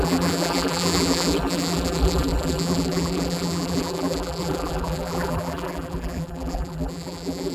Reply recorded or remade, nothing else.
remade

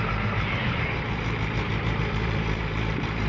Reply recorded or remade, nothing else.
remade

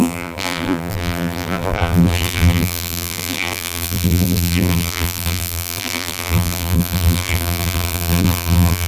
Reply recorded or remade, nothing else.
remade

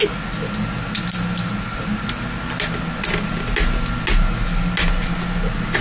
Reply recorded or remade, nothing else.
recorded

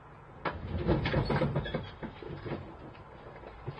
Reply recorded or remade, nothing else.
recorded